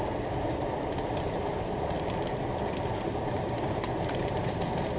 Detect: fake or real fake